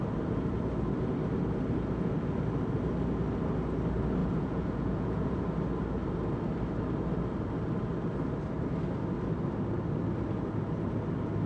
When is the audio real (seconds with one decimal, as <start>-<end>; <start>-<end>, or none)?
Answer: 0.0-4.2; 5.4-11.5